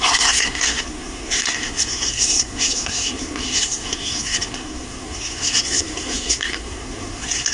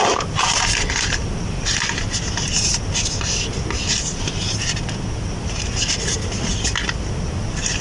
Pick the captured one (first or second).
second